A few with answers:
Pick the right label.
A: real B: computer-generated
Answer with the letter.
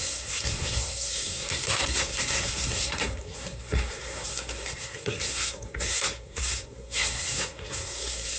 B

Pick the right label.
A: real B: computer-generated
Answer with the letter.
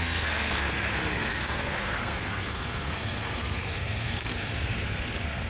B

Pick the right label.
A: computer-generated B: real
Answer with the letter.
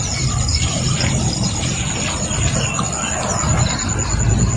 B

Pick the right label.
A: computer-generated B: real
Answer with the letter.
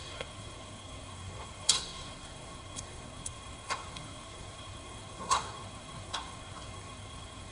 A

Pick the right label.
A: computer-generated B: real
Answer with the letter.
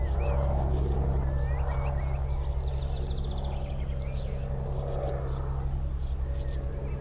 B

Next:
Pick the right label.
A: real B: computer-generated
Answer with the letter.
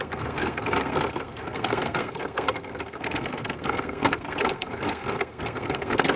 B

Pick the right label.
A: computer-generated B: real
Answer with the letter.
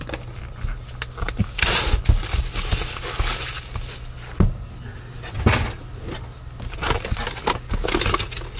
B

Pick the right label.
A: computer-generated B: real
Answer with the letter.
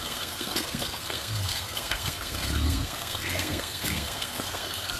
A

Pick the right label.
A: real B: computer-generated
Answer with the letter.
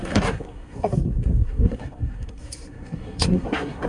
B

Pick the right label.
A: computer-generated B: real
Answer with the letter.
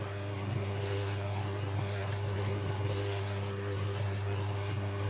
A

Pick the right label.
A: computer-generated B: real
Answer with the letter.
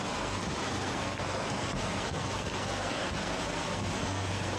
A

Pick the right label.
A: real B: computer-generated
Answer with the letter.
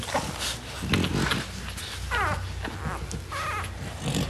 A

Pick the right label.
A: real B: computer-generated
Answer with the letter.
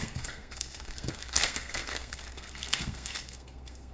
B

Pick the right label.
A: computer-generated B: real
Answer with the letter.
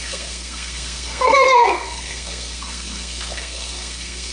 A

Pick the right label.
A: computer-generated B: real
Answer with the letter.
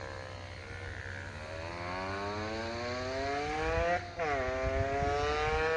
B